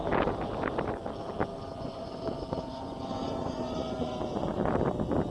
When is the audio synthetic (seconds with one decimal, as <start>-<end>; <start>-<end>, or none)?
1.5-4.7